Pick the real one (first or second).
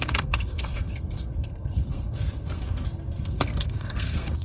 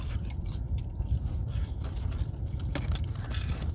second